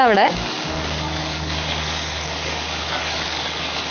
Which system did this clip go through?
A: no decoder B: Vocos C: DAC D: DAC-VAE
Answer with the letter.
C